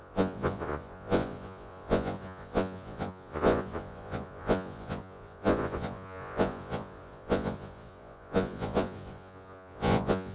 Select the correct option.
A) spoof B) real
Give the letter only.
A